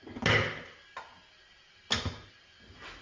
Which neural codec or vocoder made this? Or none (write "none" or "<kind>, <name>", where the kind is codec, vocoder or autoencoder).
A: none